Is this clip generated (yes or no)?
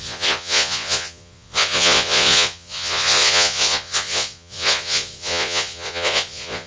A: yes